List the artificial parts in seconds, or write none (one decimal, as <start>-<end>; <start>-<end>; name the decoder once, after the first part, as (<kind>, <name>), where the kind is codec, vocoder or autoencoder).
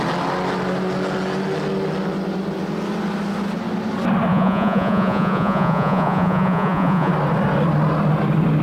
4.3-7.1 (vocoder, Vocos)